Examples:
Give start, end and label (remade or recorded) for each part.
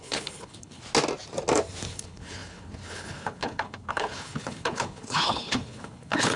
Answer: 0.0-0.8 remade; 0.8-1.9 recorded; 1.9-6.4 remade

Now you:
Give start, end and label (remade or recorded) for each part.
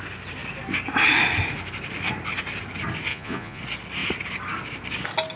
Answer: 0.0-3.1 recorded; 3.1-3.6 remade; 3.6-5.4 recorded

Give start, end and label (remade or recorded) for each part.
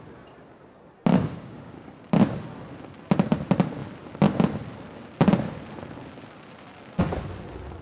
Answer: 0.0-1.1 recorded; 1.1-2.2 remade; 2.2-7.8 recorded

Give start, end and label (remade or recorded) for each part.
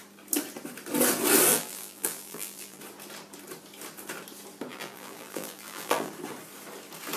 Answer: 0.0-1.5 recorded; 1.5-2.8 remade; 2.8-4.7 recorded; 4.7-6.1 remade; 6.1-7.2 recorded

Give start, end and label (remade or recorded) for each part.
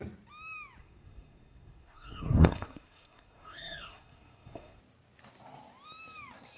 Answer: 0.0-0.8 recorded; 0.8-4.8 remade; 4.8-6.6 recorded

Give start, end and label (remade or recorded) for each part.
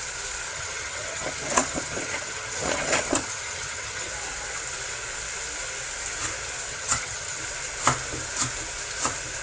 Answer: 0.0-0.5 recorded; 0.5-4.1 remade; 4.1-6.7 recorded; 6.7-7.4 remade; 7.4-9.4 recorded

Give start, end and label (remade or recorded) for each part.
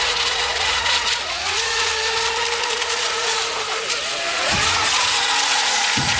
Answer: 0.0-1.9 remade; 1.9-2.6 recorded; 2.6-3.3 remade; 3.3-4.3 recorded; 4.3-6.2 remade